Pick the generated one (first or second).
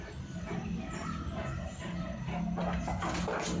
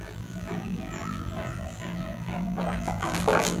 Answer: second